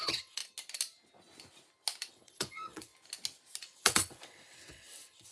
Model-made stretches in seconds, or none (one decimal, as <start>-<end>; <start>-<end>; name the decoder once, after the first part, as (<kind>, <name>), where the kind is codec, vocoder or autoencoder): 0.0-0.4 (vocoder, WaveNeXt); 2.1-2.9; 3.6-5.3